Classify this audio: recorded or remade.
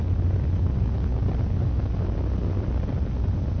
recorded